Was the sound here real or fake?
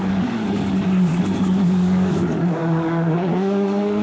fake